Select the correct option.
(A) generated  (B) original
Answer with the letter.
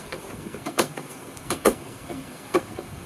A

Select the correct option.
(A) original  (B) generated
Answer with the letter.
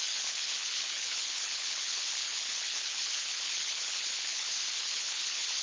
B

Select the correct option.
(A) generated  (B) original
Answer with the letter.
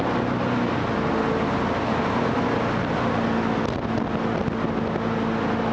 B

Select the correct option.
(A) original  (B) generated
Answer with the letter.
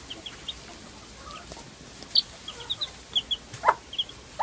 A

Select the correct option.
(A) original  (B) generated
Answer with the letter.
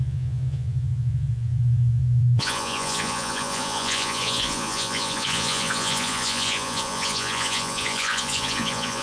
B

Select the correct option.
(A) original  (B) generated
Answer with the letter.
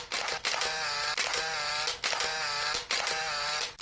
A